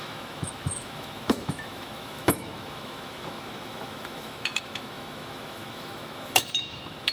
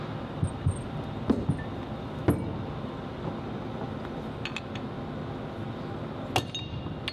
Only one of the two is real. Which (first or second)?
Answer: second